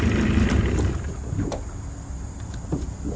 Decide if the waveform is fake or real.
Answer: real